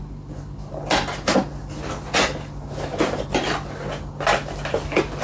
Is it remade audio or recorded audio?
recorded